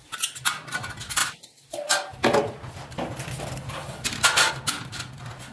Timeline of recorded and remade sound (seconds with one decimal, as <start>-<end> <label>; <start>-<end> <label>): 0.0-1.2 recorded; 1.2-4.5 remade; 4.5-5.5 recorded